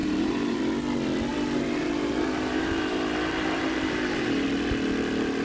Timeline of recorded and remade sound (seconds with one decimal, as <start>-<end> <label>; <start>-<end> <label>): 0.0-0.6 remade; 0.6-1.3 recorded; 1.3-4.5 remade; 4.5-5.4 recorded